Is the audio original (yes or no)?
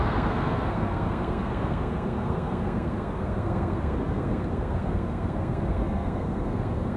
no